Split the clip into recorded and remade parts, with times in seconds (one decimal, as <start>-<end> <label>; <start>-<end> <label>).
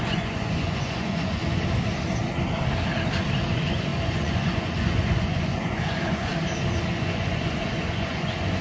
0.0-1.4 remade; 1.4-3.4 recorded; 3.4-6.3 remade; 6.3-6.9 recorded; 6.9-8.6 remade